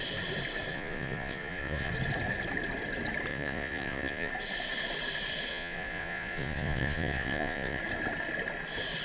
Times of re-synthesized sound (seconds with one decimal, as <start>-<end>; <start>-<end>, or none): 0.7-1.9; 3.3-4.3; 5.5-7.8